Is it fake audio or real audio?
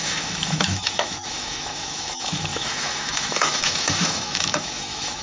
fake